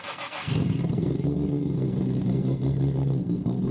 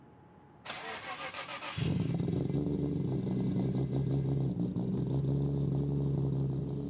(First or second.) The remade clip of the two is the first